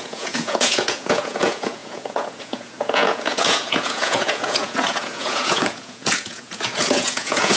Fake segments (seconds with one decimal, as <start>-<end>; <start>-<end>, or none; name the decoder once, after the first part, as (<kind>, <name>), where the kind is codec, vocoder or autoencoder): 0.0-7.6 (vocoder, Vocos)